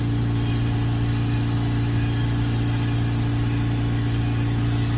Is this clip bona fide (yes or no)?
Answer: no